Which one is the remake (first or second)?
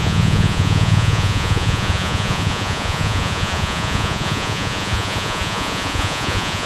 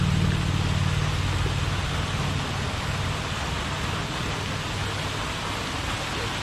first